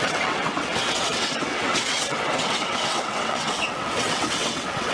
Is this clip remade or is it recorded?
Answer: remade